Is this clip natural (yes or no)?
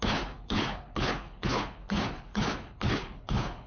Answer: no